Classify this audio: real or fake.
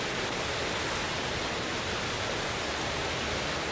real